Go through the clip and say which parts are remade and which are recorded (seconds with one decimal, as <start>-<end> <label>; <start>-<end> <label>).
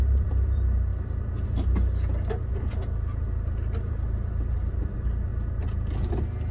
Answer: 0.0-0.9 remade; 0.9-4.8 recorded; 4.8-5.3 remade; 5.3-6.5 recorded